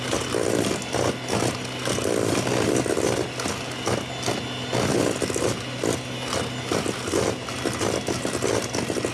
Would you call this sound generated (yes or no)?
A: no